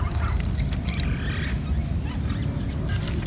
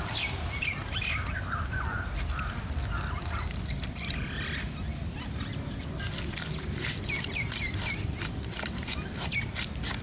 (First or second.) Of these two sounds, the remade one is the second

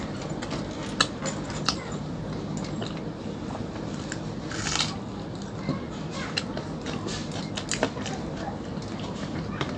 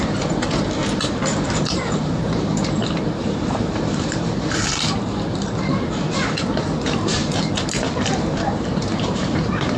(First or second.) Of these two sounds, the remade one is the second